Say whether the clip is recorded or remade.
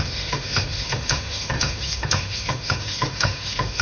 remade